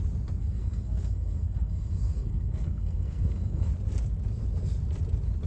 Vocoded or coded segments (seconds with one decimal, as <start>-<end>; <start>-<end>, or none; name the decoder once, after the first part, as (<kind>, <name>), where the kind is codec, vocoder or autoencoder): 0.4-3.7 (codec, SNAC)